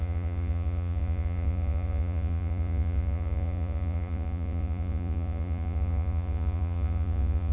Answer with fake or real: fake